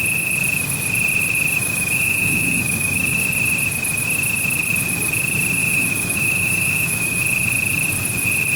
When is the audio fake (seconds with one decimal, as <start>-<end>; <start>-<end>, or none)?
1.6-3.2; 5.6-7.2